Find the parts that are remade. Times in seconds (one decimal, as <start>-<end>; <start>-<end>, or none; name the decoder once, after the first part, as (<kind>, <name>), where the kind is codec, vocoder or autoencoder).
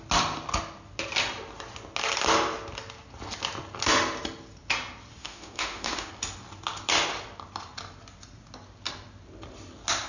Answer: 5.2-6.1 (autoencoder, DAC-VAE)